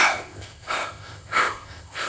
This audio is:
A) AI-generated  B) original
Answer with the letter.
A